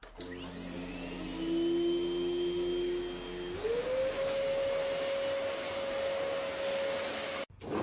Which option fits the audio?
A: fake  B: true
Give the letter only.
B